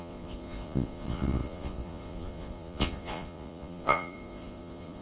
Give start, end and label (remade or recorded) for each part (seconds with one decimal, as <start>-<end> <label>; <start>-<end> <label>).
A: 0.0-5.0 remade